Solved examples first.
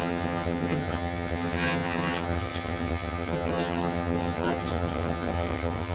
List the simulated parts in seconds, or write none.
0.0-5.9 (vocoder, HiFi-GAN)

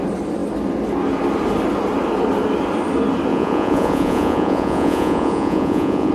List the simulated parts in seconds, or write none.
3.3-6.1 (vocoder, Vocos)

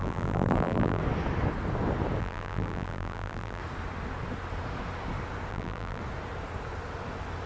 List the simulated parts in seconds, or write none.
0.0-1.0 (vocoder, BigVGAN v2); 2.2-3.6; 5.5-6.0

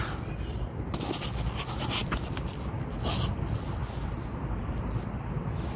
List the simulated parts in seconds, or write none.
none

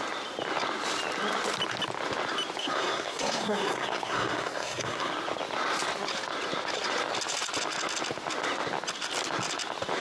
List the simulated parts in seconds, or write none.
2.6-5.1 (codec, SNAC)

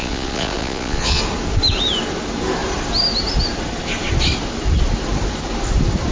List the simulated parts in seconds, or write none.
0.0-1.2 (vocoder, Vocos)

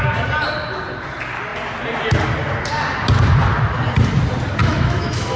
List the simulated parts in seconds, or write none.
4.6-5.4 (autoencoder, DAC-VAE)

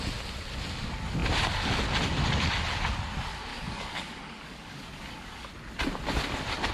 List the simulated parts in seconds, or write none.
3.5-5.5 (codec, DAC)